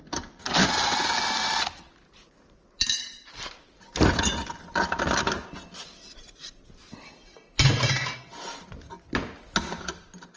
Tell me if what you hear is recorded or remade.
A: recorded